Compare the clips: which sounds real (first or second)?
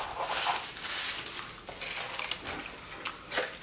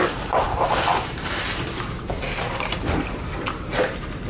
first